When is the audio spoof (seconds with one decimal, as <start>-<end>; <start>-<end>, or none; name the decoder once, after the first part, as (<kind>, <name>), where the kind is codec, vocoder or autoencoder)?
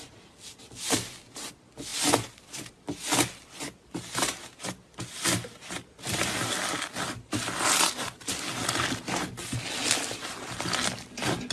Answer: none